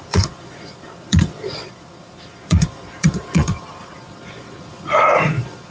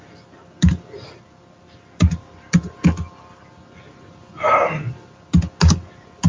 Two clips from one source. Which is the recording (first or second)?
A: second